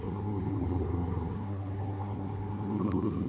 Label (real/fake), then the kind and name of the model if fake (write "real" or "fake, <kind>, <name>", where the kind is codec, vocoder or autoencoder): fake, codec, SNAC